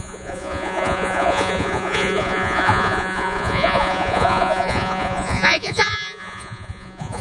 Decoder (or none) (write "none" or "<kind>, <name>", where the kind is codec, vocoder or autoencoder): vocoder, Vocos